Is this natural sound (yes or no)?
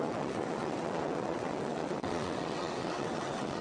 no